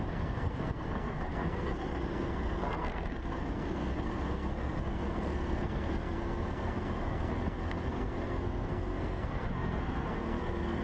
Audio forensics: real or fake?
fake